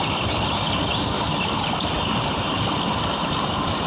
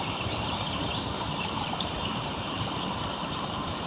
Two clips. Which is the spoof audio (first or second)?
second